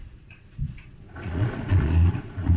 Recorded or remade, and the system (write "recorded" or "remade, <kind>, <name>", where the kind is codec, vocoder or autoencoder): remade, vocoder, Vocos